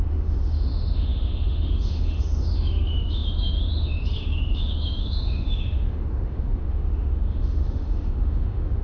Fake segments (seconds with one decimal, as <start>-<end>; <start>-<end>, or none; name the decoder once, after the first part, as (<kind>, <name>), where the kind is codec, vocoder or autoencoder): 0.0-8.8 (autoencoder, DAC-VAE)

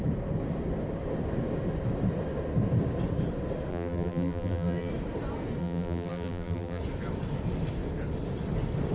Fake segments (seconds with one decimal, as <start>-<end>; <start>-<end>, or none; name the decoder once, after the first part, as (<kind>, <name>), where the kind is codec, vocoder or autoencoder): 3.7-4.9 (vocoder, BigVGAN v2); 5.6-6.8

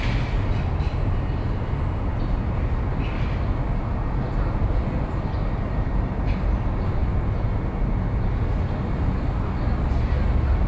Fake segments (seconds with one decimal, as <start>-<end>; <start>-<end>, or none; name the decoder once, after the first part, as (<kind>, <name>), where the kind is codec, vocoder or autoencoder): none

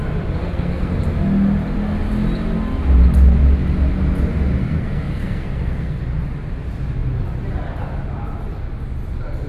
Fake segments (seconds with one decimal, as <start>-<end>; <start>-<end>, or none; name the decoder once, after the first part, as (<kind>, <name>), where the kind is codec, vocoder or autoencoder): 0.4-1.0 (codec, SNAC); 4.6-6.0